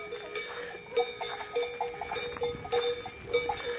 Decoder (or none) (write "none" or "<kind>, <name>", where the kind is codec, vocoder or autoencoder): none